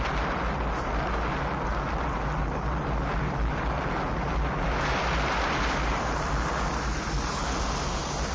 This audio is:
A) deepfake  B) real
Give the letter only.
B